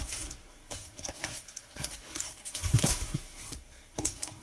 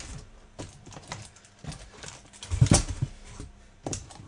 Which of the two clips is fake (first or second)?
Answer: first